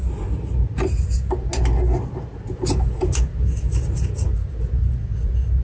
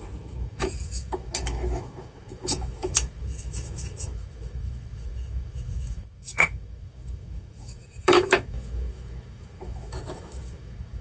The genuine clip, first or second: first